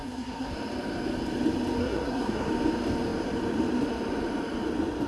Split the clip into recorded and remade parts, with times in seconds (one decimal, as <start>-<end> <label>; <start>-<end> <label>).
0.0-0.5 remade; 0.5-1.8 recorded; 1.8-2.5 remade; 2.5-5.1 recorded